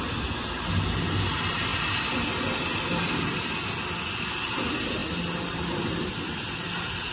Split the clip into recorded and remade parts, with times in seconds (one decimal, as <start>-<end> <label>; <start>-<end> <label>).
0.0-7.1 recorded